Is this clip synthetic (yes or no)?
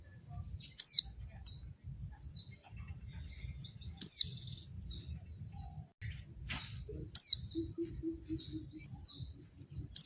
no